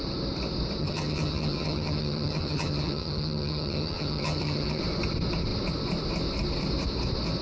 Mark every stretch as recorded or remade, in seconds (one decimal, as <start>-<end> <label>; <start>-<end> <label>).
0.0-0.8 recorded; 0.8-4.8 remade; 4.8-7.4 recorded